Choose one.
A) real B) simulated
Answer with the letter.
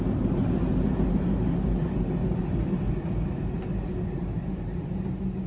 A